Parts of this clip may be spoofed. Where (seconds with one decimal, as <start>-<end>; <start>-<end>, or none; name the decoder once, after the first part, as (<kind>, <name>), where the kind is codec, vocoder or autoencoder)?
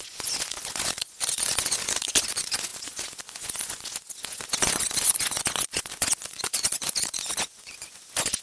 0.0-8.4 (vocoder, Vocos)